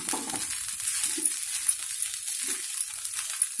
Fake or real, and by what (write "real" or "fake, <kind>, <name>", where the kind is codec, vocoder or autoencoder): real